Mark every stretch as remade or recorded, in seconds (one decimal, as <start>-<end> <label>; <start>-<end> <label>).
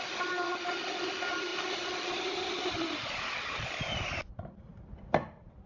0.0-5.7 recorded